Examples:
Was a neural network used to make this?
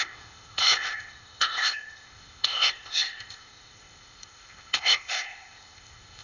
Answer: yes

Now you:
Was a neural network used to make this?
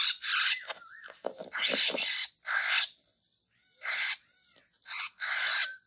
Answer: yes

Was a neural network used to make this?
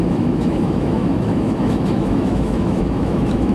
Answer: yes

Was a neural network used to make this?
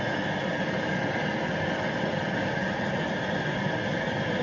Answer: no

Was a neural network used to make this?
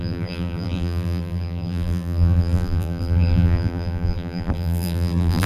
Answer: yes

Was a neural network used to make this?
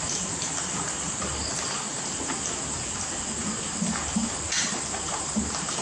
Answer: no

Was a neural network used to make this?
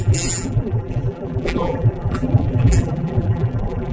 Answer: yes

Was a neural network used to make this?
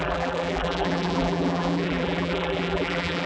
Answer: yes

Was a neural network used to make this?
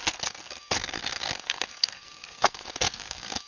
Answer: yes